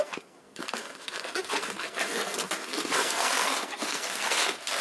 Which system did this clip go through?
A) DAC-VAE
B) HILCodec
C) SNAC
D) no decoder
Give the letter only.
C